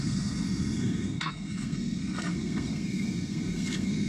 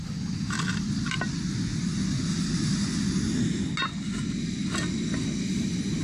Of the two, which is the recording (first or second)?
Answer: second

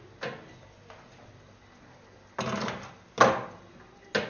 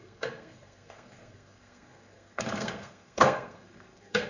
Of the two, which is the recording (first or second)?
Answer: first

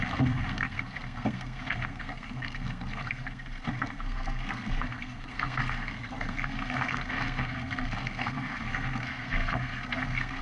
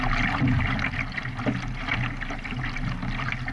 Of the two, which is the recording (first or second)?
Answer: second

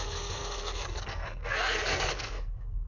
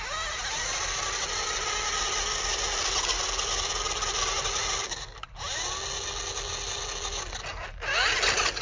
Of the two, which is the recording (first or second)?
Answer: second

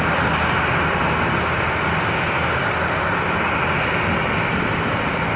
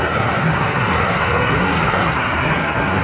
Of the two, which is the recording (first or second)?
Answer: first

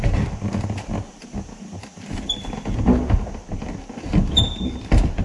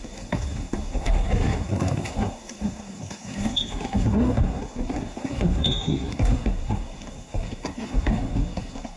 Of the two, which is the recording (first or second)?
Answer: first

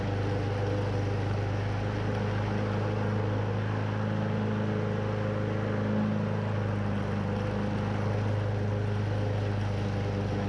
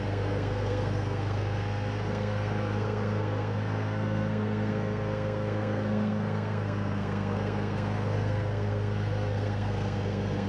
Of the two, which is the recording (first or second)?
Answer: first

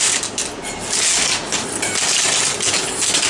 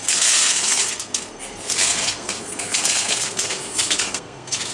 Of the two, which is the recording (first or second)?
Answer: first